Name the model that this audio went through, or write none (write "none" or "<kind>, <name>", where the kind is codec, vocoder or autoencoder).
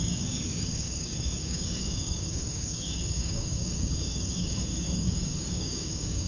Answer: codec, DAC